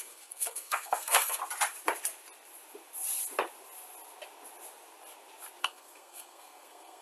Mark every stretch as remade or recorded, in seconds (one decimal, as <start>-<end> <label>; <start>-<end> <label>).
0.0-1.4 remade; 1.4-5.6 recorded; 5.6-7.0 remade